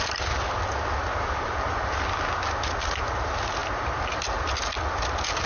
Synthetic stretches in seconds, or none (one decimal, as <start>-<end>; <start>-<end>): none